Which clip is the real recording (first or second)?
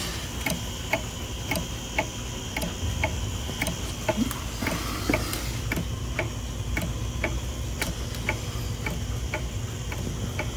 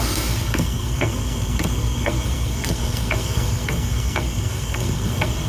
first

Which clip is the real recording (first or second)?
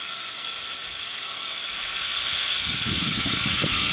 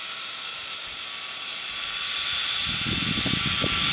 second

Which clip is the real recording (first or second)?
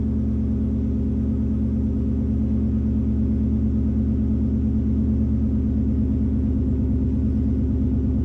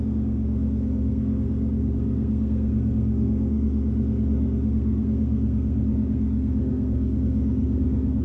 first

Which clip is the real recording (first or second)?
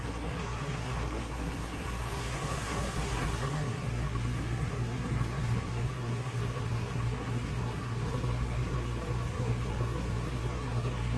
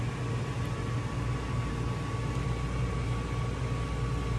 second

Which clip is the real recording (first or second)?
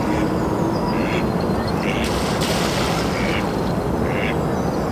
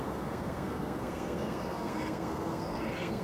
first